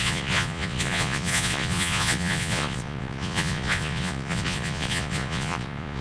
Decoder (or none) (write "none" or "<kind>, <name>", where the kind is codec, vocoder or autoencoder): vocoder, Vocos